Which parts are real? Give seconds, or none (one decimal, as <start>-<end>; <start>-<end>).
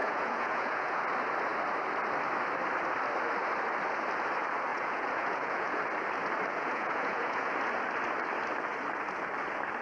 1.0-4.7; 5.8-6.5; 7.5-9.8